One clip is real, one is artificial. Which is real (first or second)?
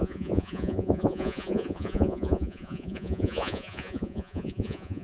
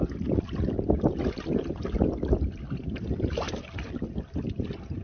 second